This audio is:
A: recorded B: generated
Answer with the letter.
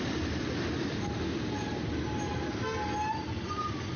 A